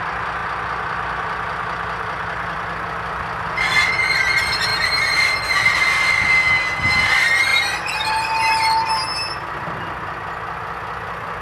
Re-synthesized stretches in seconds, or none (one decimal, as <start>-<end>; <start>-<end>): 4.7-5.8; 7.5-8.1

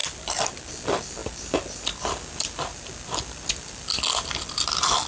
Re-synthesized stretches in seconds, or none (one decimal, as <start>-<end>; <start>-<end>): 0.0-1.2; 4.3-5.1